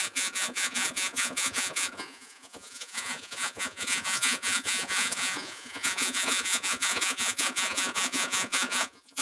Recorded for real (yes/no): no